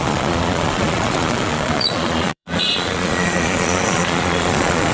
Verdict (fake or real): fake